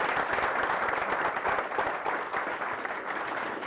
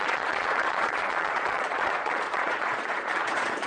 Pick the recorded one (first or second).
first